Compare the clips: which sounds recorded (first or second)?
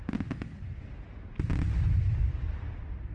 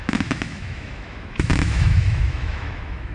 first